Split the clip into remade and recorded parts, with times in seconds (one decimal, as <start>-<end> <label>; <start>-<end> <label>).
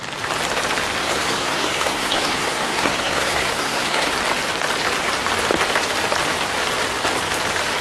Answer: 0.0-1.0 recorded; 1.0-4.1 remade; 4.1-7.8 recorded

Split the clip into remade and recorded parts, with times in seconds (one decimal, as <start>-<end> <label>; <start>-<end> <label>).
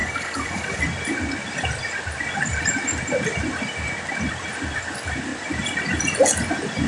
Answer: 0.0-0.8 remade; 0.8-6.9 recorded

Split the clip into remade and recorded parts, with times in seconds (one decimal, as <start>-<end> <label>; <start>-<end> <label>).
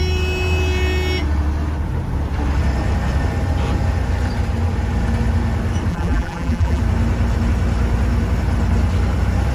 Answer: 0.0-5.9 recorded; 5.9-6.8 remade; 6.8-9.5 recorded